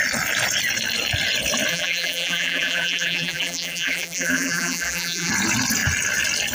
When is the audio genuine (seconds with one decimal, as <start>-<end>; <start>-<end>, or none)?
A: 0.0-1.7; 5.3-6.5